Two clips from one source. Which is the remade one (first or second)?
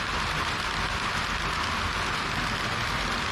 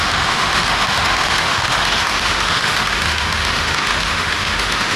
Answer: second